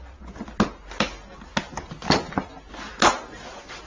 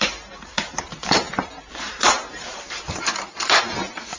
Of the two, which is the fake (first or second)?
second